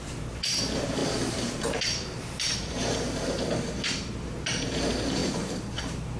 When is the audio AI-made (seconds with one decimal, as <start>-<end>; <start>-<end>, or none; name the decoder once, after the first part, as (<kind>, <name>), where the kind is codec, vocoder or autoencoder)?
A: 0.0-5.2 (vocoder, BigVGAN v2); 5.8-6.2